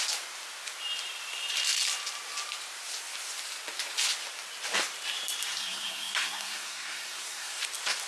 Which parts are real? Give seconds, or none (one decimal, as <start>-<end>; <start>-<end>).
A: 0.0-5.6; 7.6-8.1